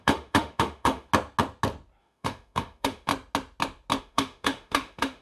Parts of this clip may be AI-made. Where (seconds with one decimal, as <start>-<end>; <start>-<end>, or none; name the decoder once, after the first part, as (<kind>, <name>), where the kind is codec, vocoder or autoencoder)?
0.0-1.1 (autoencoder, DAC-VAE); 2.0-3.1; 4.0-5.2